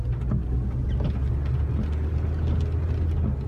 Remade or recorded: recorded